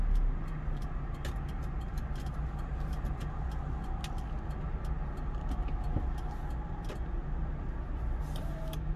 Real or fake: real